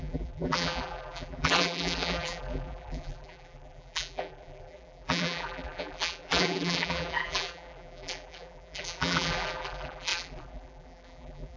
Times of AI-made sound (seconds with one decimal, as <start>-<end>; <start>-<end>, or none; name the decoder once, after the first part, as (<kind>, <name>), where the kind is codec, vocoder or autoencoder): 0.0-11.6 (vocoder, BigVGAN v2)